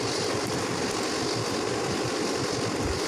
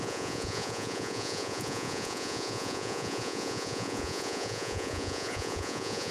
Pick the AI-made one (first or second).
second